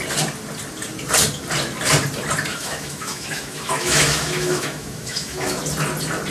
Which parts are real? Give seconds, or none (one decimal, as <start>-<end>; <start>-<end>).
0.0-2.5; 5.6-6.3